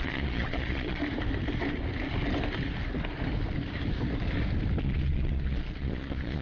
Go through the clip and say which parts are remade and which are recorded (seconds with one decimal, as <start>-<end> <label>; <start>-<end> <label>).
0.0-1.0 remade; 1.0-4.8 recorded; 4.8-6.4 remade

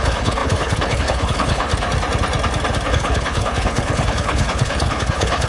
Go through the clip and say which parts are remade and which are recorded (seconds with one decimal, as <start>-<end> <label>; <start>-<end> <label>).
0.0-1.7 remade; 1.7-2.9 recorded; 2.9-5.5 remade

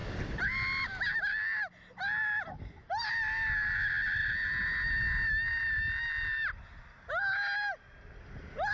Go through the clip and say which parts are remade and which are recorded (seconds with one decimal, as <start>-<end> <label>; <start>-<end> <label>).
0.0-8.7 recorded

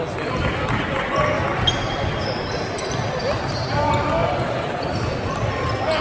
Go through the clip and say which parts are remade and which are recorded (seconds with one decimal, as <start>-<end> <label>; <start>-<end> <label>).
0.0-6.0 recorded

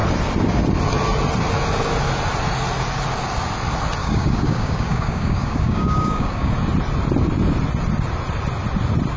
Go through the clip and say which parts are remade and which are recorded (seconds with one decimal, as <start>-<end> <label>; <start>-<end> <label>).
0.0-4.0 recorded; 4.0-6.5 remade; 6.5-9.2 recorded

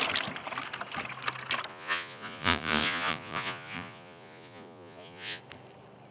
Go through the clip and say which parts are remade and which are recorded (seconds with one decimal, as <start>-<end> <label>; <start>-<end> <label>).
0.0-1.7 recorded; 1.7-5.4 remade; 5.4-6.1 recorded

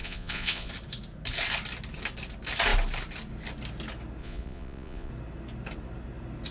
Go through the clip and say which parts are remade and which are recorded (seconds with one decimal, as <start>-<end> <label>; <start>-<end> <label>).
0.0-0.7 remade; 0.7-4.2 recorded; 4.2-5.1 remade; 5.1-6.5 recorded

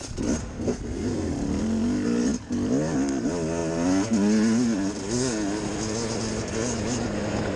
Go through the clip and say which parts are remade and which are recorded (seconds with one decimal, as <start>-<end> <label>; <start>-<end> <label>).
0.0-0.4 recorded; 0.4-1.3 remade; 1.3-7.6 recorded